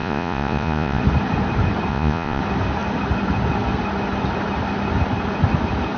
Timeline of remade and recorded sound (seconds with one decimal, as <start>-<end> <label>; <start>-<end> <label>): 0.0-1.0 remade; 1.0-1.9 recorded; 1.9-2.4 remade; 2.4-6.0 recorded